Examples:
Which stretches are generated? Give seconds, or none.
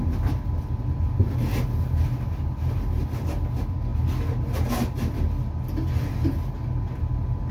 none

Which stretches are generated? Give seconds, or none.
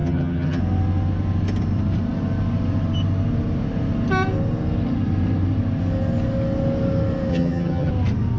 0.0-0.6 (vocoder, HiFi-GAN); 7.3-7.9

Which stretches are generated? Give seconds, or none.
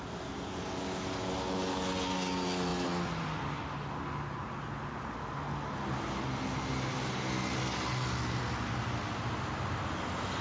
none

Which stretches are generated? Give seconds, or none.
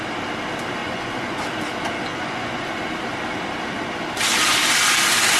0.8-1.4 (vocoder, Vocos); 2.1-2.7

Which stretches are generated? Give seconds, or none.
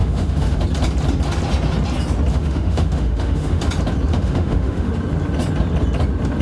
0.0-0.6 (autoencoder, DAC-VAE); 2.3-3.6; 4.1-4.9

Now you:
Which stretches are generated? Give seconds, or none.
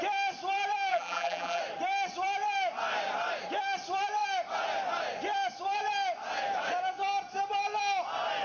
0.9-1.6 (vocoder, BigVGAN v2)